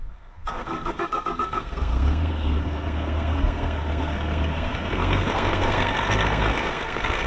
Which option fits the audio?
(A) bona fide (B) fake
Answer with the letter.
B